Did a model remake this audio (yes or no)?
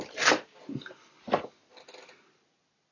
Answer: no